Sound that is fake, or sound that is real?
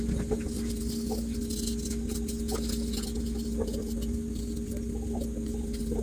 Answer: real